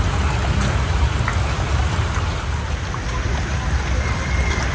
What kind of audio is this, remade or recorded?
recorded